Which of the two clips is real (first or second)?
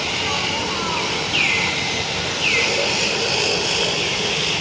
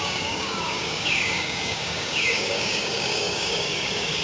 first